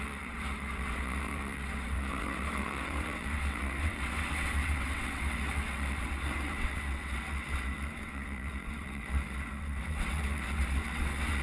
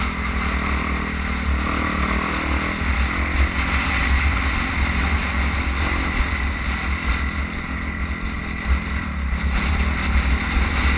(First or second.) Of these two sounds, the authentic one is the second